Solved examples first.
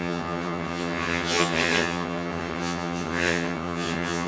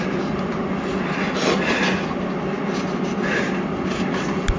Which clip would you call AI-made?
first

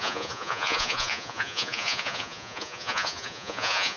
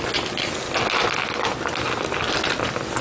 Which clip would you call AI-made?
first